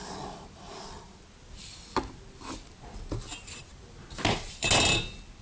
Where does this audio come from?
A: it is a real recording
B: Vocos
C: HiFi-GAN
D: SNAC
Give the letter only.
A